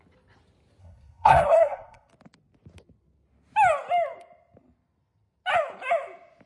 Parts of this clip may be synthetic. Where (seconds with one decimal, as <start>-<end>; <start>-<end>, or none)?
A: 0.8-2.1

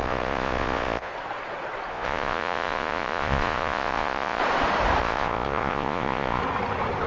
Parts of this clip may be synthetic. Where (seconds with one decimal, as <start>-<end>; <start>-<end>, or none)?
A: 0.0-1.1; 1.9-4.4; 5.0-6.4

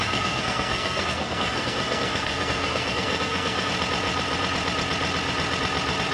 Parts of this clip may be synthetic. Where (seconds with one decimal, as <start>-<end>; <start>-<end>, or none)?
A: 0.0-3.7

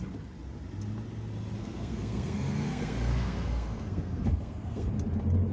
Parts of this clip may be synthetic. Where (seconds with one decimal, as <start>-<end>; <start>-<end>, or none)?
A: 1.6-4.9

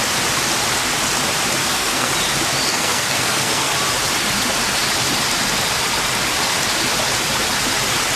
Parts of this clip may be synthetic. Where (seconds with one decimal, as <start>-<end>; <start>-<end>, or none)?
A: 1.6-2.1; 2.7-3.7

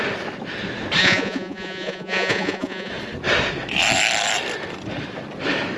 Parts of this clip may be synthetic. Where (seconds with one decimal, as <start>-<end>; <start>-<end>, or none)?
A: 1.0-2.9

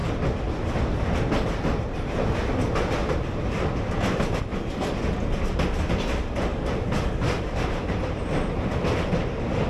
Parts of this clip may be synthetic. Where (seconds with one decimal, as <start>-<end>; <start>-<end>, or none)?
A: 3.0-3.6; 6.5-8.6

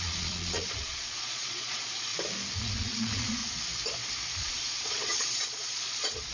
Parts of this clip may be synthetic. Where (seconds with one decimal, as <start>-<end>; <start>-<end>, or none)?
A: 0.0-2.1; 2.6-3.4; 4.4-6.3